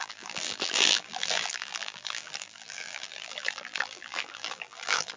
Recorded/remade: remade